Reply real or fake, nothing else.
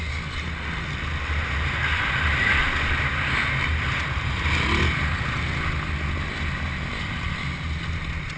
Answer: real